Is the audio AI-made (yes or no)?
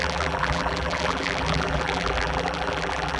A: yes